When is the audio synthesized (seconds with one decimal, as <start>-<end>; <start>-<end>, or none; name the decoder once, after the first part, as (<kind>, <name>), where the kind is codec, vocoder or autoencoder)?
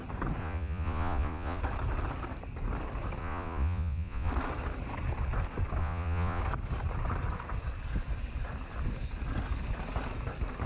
0.4-1.6 (vocoder, Vocos); 3.2-4.3; 5.8-6.4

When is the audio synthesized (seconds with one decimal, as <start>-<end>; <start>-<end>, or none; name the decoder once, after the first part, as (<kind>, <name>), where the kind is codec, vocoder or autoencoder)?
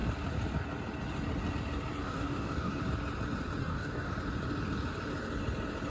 2.0-2.8 (codec, DAC); 3.6-4.1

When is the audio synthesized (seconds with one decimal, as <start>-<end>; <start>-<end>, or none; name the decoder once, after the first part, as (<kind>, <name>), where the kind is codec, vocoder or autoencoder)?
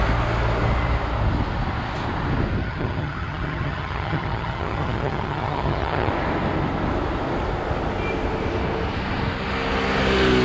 2.6-6.1 (vocoder, HiFi-GAN)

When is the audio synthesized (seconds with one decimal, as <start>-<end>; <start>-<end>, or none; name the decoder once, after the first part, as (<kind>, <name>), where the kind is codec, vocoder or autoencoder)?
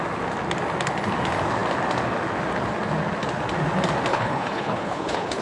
4.1-5.4 (codec, HILCodec)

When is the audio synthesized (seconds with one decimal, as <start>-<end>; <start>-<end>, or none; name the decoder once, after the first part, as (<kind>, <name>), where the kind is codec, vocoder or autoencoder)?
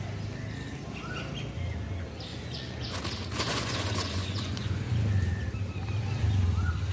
2.3-3.0 (vocoder, Vocos); 3.5-4.8